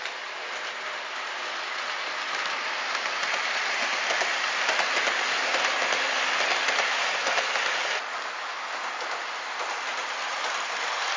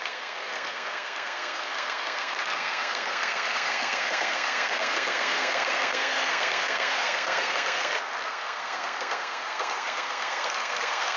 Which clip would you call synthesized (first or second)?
second